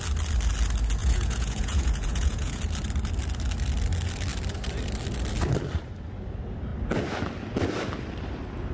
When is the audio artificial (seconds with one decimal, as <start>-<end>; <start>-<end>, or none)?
1.0-2.6